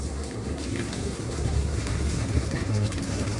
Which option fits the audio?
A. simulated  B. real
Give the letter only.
A